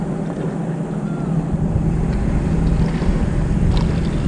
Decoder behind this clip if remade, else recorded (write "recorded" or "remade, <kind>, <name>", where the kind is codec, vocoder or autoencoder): recorded